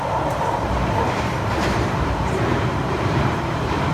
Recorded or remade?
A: remade